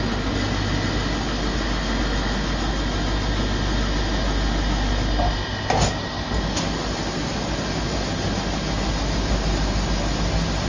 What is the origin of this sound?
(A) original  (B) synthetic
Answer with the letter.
A